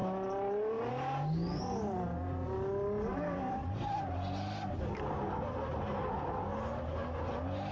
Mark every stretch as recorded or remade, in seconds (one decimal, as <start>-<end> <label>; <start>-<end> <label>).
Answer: 0.0-3.1 recorded; 3.1-4.7 remade; 4.7-7.7 recorded